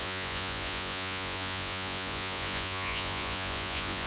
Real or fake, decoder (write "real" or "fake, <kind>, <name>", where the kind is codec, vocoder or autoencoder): fake, vocoder, Vocos